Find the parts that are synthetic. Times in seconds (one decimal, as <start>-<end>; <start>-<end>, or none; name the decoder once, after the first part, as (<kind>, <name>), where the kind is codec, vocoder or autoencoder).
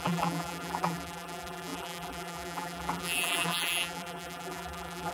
0.0-5.1 (vocoder, BigVGAN v2)